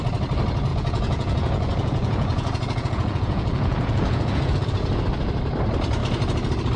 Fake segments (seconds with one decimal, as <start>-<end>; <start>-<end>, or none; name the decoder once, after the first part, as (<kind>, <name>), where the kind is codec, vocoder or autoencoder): 0.7-4.8 (vocoder, Vocos)